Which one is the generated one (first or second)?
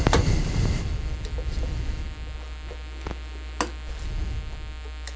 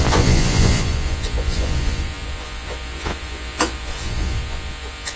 second